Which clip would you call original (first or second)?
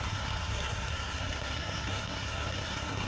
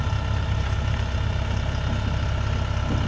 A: second